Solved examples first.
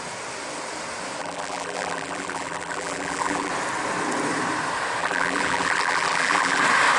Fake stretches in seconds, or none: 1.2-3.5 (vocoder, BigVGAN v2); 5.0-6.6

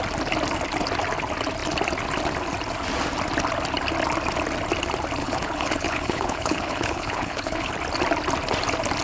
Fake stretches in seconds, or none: 5.2-7.7 (codec, HILCodec)

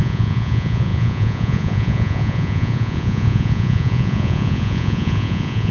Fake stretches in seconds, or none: 0.0-5.7 (vocoder, Vocos)

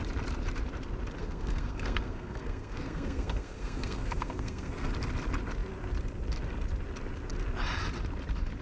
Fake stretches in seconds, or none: 1.2-4.9 (codec, SNAC)

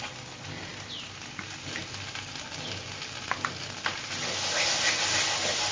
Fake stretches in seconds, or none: none